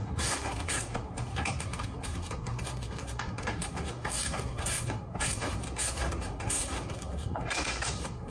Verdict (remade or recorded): remade